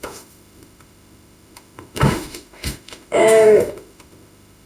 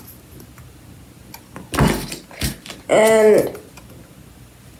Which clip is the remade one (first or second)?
first